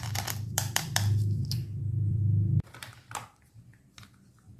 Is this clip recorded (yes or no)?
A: no